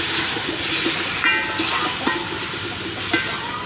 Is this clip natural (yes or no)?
yes